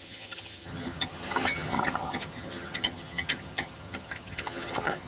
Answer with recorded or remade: remade